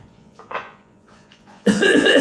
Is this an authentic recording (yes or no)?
no